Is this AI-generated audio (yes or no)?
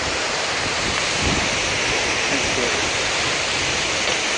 no